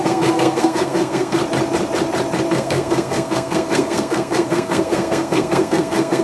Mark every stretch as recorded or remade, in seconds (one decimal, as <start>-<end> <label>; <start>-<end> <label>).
0.0-1.4 remade; 1.4-2.5 recorded; 2.5-6.2 remade